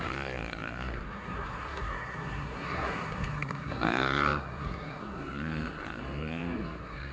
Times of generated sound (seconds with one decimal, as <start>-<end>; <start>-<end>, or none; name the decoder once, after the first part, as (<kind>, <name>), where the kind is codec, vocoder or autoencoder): 0.0-7.1 (codec, SNAC)